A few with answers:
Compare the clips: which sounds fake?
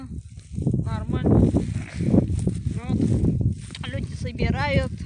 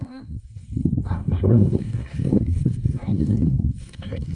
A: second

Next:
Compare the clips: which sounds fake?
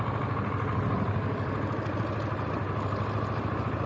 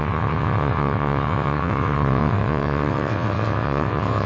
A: second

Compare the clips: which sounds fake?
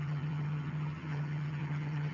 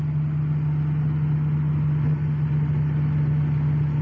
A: first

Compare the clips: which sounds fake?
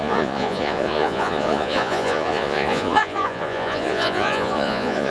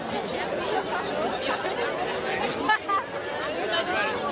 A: first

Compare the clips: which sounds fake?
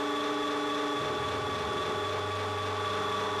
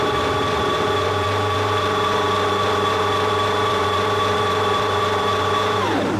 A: second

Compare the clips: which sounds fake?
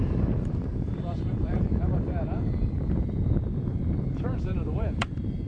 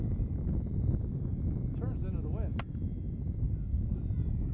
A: first